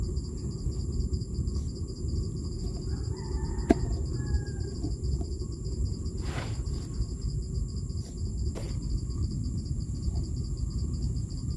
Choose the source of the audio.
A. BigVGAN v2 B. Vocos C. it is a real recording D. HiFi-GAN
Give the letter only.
A